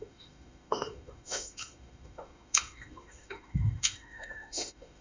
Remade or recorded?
remade